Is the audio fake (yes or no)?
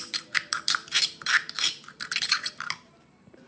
yes